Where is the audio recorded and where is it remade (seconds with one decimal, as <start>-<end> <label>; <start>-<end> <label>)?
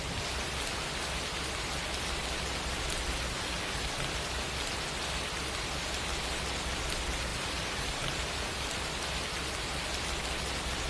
0.0-7.3 recorded; 7.3-8.9 remade; 8.9-10.9 recorded